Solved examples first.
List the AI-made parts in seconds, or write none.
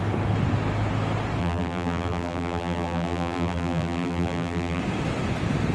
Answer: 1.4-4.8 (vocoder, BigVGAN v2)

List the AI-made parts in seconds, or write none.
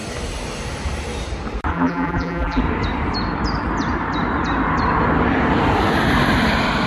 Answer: 1.7-2.6 (vocoder, BigVGAN v2)